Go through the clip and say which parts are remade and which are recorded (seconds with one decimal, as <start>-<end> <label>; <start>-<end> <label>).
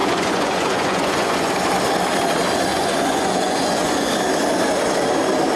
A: 0.0-1.5 remade; 1.5-2.7 recorded; 2.7-4.1 remade; 4.1-5.6 recorded